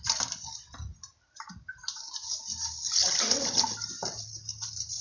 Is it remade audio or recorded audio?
recorded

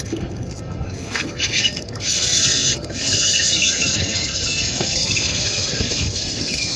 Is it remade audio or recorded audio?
remade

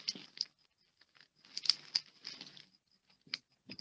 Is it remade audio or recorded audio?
recorded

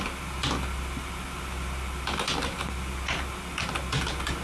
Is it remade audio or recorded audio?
recorded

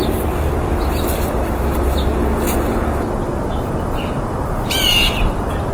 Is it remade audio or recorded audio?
recorded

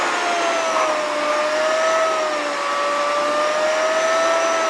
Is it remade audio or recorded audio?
recorded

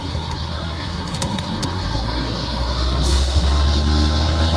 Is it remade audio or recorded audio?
remade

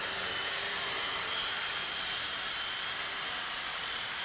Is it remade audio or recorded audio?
recorded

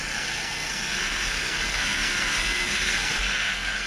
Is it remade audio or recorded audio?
remade